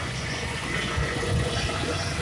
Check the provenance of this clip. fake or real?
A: fake